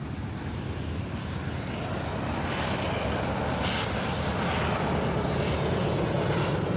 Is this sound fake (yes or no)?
no